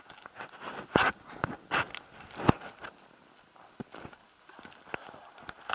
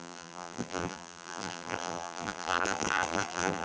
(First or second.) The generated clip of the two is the second